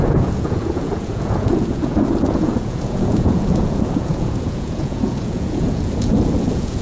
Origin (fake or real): fake